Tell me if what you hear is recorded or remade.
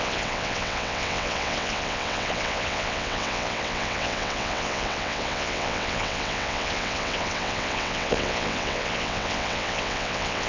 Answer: remade